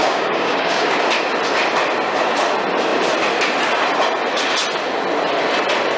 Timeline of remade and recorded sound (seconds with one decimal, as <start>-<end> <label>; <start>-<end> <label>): 0.0-1.0 remade; 1.0-6.0 recorded